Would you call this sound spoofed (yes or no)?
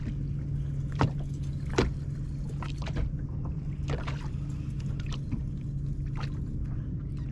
no